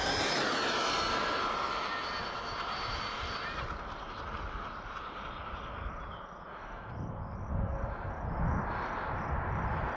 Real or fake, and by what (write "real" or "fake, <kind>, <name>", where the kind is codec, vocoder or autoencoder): real